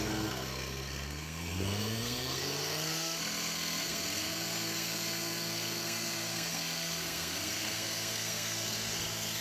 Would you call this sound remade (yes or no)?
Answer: yes